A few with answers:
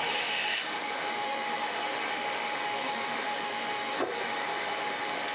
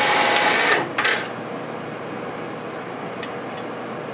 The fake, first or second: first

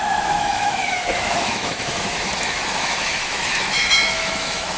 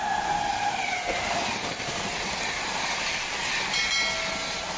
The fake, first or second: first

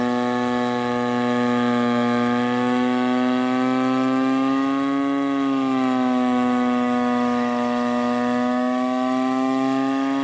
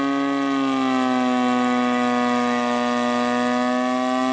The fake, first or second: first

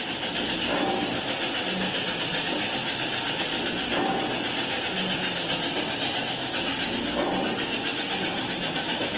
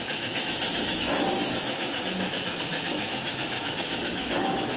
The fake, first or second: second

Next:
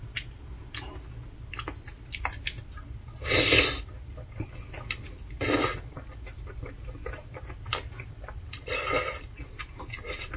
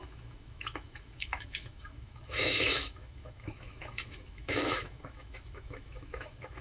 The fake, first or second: second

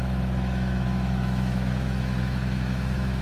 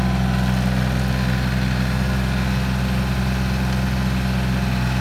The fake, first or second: first